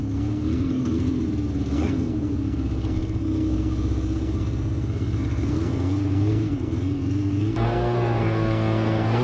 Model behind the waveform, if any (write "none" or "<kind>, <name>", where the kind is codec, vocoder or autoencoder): codec, SNAC